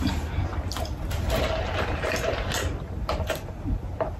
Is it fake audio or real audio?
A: real